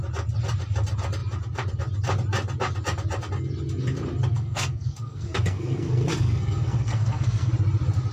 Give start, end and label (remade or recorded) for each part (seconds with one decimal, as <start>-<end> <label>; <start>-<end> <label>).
0.0-4.3 recorded; 4.3-7.5 remade; 7.5-8.1 recorded